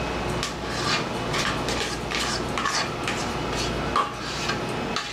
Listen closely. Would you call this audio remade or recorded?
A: recorded